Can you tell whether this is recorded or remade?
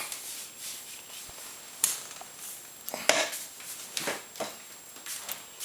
recorded